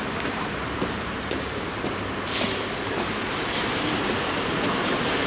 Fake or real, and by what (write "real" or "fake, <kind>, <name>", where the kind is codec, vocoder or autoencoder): fake, vocoder, BigVGAN v2